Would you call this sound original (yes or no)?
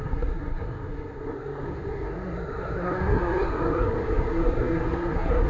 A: no